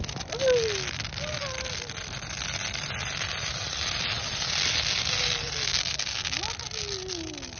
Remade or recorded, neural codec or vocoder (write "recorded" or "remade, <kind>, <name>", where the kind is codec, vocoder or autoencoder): recorded